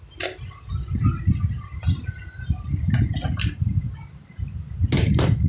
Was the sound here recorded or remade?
recorded